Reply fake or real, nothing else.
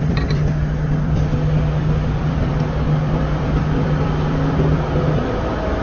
fake